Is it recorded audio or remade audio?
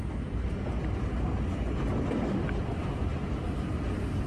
recorded